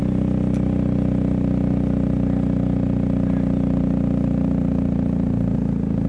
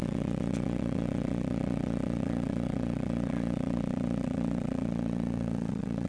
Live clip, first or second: first